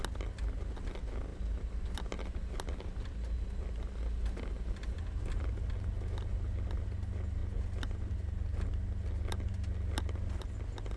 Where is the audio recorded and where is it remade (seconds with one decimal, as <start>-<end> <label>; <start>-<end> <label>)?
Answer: 0.0-11.0 recorded